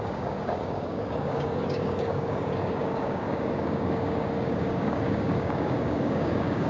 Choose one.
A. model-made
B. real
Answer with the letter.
A